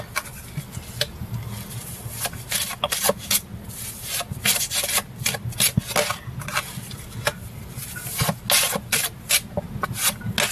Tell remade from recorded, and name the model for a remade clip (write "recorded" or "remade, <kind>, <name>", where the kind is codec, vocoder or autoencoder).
recorded